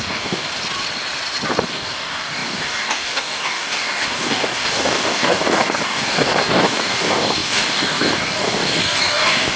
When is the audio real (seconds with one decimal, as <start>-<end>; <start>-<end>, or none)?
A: 0.5-1.7